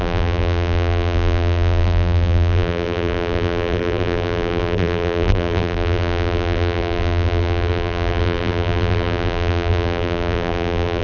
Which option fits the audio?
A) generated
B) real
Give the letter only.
A